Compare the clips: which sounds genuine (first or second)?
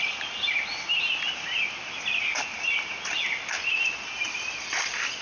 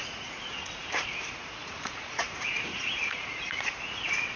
first